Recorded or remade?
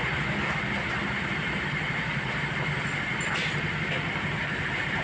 recorded